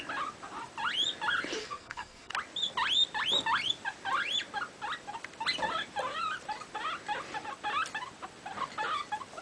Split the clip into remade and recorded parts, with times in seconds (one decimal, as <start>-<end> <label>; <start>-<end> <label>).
0.0-1.6 recorded; 1.6-2.3 remade; 2.3-9.4 recorded